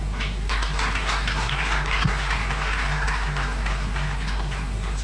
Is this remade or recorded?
remade